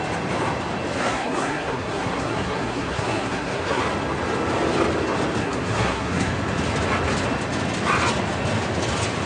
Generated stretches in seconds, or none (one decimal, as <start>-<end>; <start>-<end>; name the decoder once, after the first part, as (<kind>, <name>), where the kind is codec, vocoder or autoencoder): 1.0-3.8 (codec, SNAC); 5.4-6.3